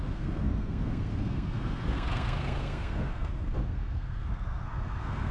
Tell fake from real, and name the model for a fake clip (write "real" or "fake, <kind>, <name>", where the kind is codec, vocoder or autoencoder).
fake, codec, SNAC